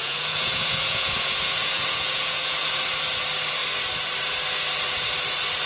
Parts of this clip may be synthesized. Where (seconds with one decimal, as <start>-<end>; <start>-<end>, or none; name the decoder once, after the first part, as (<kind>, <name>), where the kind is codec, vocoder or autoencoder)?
0.0-2.7 (vocoder, Vocos)